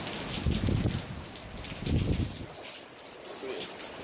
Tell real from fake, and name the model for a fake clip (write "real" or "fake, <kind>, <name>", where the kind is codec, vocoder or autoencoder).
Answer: real